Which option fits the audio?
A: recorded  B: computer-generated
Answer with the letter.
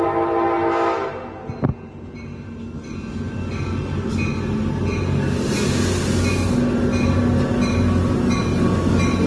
A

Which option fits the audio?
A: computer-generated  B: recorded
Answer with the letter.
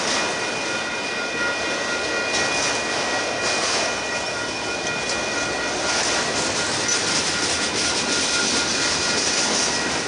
B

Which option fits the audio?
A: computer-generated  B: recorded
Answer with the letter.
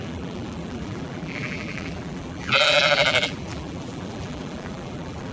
A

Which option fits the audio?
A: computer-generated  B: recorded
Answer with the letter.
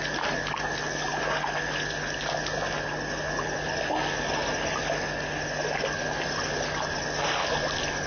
B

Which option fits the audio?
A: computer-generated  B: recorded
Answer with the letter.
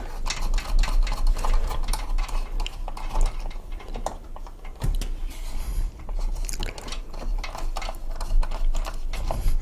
B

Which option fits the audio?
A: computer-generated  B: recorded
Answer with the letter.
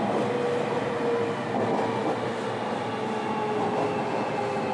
B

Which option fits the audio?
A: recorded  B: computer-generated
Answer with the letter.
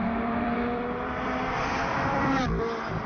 B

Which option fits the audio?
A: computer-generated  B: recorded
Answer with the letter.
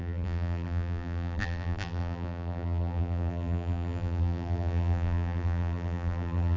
A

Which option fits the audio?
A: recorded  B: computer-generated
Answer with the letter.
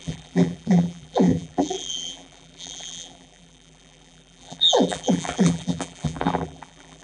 B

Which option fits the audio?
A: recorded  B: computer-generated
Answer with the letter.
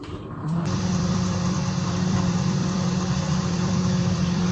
B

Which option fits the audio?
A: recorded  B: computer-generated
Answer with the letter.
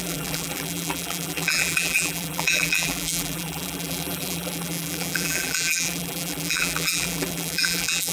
B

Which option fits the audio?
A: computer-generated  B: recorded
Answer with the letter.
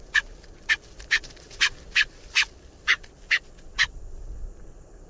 B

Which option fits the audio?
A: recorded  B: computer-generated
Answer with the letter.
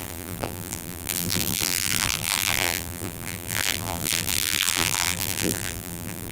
B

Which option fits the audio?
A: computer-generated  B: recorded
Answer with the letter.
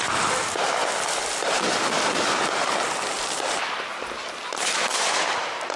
A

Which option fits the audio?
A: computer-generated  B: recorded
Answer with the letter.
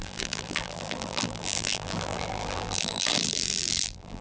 A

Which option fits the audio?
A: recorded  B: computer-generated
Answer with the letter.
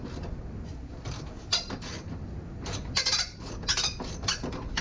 A